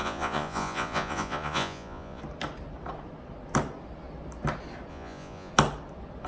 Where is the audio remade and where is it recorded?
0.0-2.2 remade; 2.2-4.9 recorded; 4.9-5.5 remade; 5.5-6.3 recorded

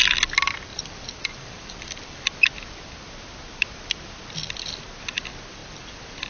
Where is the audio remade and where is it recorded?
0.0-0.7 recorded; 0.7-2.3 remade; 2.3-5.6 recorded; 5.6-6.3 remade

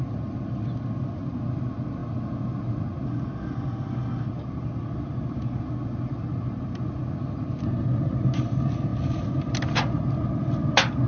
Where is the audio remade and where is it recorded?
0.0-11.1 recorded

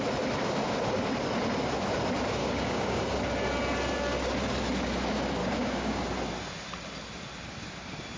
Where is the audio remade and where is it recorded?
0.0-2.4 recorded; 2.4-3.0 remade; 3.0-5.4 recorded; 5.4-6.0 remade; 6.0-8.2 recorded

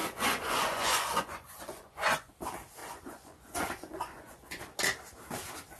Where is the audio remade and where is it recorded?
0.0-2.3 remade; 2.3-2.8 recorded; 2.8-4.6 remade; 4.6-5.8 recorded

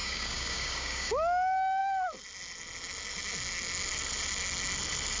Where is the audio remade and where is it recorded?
0.0-1.1 remade; 1.1-5.2 recorded

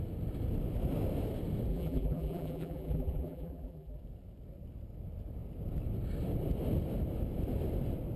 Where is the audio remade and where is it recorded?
0.0-1.7 recorded; 1.7-4.0 remade; 4.0-8.2 recorded

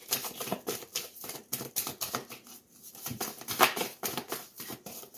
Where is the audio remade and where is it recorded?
0.0-2.8 recorded; 2.8-5.2 remade